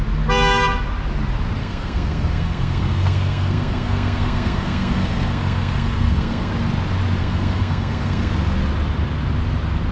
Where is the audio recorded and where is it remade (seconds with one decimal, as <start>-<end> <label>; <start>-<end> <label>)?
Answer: 0.0-1.6 recorded; 1.6-6.5 remade; 6.5-7.2 recorded; 7.2-8.3 remade; 8.3-9.9 recorded